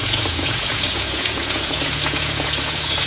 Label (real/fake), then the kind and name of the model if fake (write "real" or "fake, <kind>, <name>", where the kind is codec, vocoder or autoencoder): fake, vocoder, Vocos